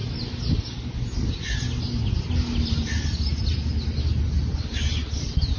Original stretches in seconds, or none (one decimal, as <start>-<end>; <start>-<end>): 0.0-5.6